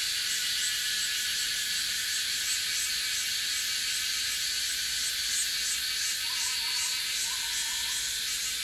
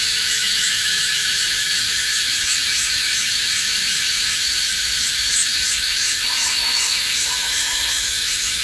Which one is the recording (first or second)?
first